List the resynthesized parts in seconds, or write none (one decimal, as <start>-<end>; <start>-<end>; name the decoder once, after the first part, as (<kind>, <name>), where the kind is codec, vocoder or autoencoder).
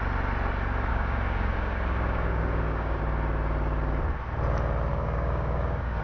0.9-3.0 (codec, DAC); 4.9-6.0